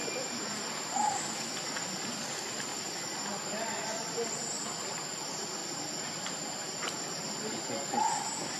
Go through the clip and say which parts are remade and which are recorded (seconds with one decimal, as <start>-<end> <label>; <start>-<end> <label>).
0.0-5.1 remade; 5.1-5.6 recorded; 5.6-7.6 remade; 7.6-8.6 recorded

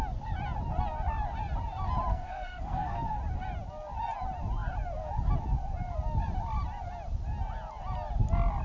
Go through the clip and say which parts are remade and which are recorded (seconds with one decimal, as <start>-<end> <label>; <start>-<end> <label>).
0.0-2.1 recorded; 2.1-3.2 remade; 3.2-8.6 recorded

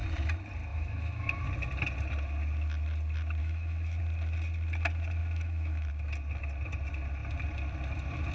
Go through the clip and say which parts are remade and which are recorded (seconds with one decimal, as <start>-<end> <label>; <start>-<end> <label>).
0.0-0.7 recorded; 0.7-1.4 remade; 1.4-3.4 recorded; 3.4-4.0 remade; 4.0-5.2 recorded; 5.2-5.9 remade; 5.9-8.3 recorded